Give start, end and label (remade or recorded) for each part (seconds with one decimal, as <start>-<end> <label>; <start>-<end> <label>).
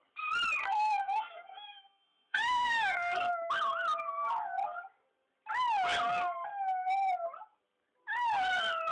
0.0-0.6 recorded; 0.6-3.3 remade; 3.3-8.9 recorded